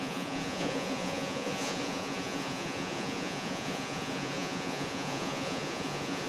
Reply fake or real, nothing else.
fake